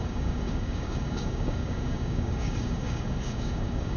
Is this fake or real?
fake